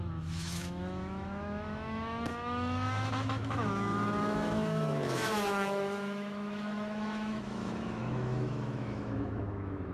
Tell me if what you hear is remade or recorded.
remade